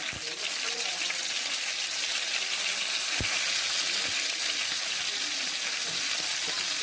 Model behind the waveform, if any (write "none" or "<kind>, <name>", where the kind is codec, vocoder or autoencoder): none